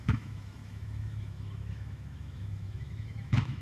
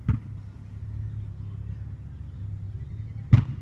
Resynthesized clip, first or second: first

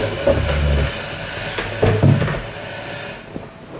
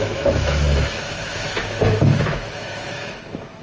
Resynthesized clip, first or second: second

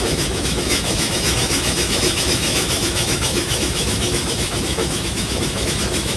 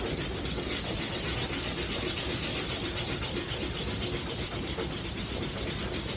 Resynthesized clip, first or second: first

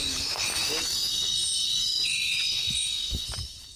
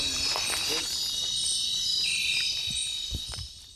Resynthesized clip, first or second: first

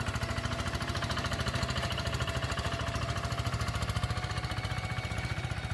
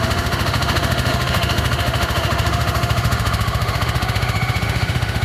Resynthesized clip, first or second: second